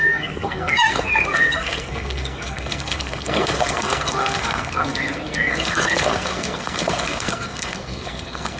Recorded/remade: remade